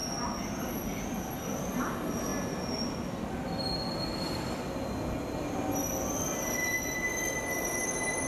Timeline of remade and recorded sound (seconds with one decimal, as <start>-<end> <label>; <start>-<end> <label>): 0.0-8.3 recorded